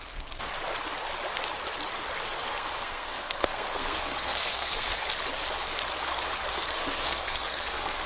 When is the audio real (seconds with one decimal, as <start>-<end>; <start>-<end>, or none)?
0.5-2.4; 5.0-6.6